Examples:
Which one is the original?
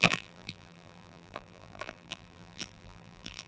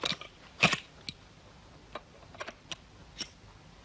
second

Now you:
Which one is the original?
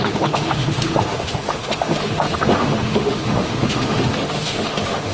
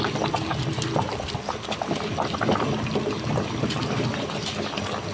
second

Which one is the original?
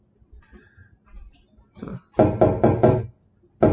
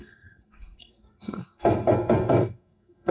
first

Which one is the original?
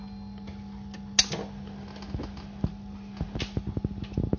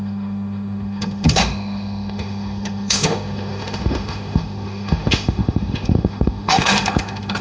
first